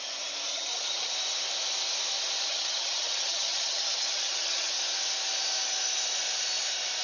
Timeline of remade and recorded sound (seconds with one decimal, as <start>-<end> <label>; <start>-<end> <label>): 0.0-0.5 recorded; 0.5-1.1 remade; 1.1-2.5 recorded; 2.5-4.8 remade; 4.8-7.0 recorded